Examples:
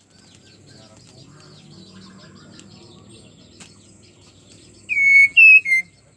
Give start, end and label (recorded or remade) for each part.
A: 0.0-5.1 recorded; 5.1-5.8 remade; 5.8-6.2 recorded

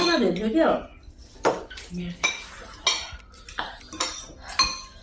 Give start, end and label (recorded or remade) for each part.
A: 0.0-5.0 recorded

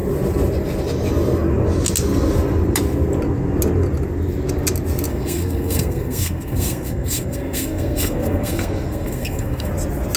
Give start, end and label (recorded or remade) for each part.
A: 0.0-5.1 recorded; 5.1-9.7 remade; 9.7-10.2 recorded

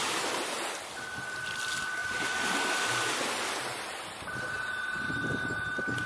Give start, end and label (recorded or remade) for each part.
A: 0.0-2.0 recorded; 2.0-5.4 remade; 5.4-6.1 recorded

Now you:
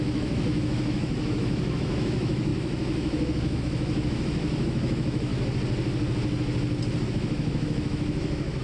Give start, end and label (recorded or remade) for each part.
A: 0.0-5.3 remade; 5.3-7.1 recorded; 7.1-8.6 remade